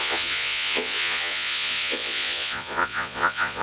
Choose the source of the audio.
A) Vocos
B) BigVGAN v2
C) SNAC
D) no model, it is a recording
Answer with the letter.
A